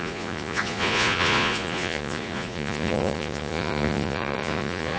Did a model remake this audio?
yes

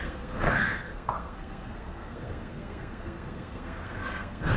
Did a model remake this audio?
yes